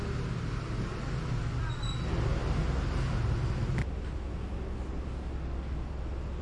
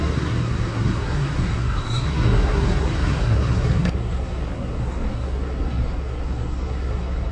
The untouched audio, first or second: first